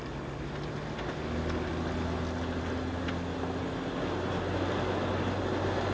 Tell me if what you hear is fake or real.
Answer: real